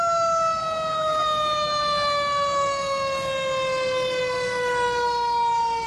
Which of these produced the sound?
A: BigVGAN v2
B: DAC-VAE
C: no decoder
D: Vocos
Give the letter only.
C